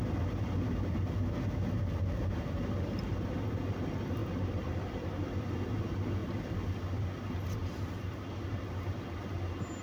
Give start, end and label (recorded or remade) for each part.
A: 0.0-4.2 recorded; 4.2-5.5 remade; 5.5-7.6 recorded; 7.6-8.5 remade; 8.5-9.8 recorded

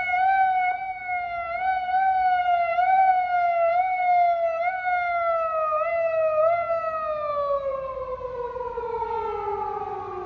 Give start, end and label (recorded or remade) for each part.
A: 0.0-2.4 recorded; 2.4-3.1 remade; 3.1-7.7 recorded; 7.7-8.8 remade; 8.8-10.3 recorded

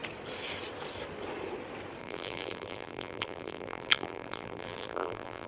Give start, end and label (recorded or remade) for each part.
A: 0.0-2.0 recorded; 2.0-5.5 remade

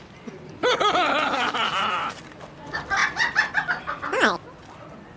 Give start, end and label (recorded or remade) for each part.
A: 0.0-1.7 recorded; 1.7-2.2 remade; 2.2-5.2 recorded

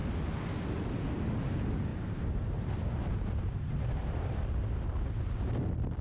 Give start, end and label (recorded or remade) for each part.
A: 0.0-1.9 recorded; 1.9-4.4 remade; 4.4-6.0 recorded